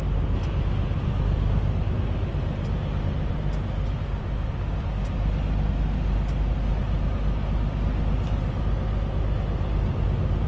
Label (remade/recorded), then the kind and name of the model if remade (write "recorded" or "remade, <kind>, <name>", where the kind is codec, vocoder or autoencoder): recorded